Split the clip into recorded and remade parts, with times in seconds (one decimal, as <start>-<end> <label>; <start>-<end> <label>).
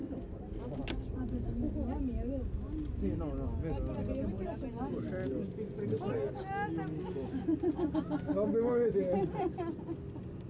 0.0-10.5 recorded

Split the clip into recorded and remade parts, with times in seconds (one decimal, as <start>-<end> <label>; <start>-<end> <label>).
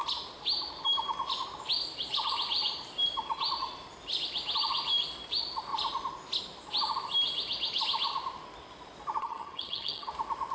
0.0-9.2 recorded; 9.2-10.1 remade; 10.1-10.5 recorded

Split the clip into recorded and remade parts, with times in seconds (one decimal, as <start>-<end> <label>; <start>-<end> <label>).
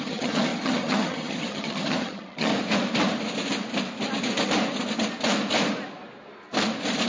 0.0-2.5 remade; 2.5-7.1 recorded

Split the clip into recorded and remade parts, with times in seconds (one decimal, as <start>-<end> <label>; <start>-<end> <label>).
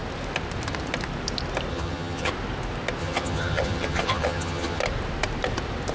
0.0-1.7 recorded; 1.7-2.3 remade; 2.3-3.0 recorded; 3.0-4.8 remade; 4.8-5.9 recorded